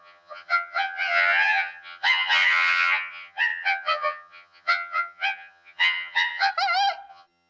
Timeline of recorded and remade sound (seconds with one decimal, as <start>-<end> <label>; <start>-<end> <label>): 0.0-6.5 remade; 6.5-7.1 recorded; 7.1-7.5 remade